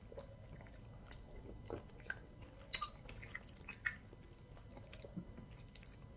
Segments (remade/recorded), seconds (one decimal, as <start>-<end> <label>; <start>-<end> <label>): 0.0-6.2 recorded